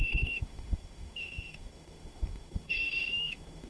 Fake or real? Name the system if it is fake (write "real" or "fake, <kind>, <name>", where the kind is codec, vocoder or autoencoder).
fake, autoencoder, DAC-VAE